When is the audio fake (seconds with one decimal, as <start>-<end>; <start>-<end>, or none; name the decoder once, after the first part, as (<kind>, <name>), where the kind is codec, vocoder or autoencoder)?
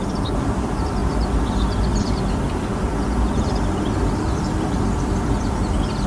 0.0-1.0 (vocoder, BigVGAN v2); 2.0-2.9; 4.0-6.1